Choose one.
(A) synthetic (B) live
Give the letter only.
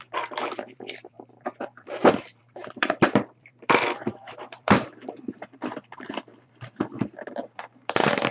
A